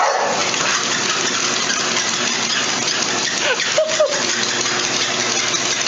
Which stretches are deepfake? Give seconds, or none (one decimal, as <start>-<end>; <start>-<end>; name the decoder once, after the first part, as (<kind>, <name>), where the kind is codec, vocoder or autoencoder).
none